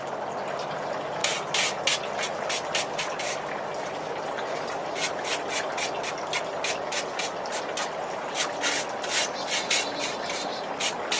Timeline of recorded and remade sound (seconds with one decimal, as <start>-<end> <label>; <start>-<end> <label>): 0.0-11.2 recorded